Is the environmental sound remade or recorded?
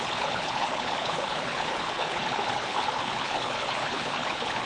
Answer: remade